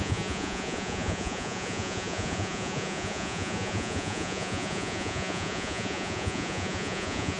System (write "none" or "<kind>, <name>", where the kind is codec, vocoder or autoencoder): vocoder, Vocos